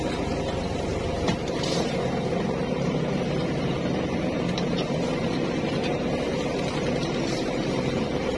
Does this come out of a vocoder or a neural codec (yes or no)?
yes